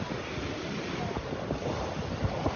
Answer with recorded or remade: recorded